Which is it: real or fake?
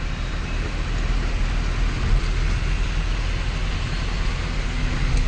real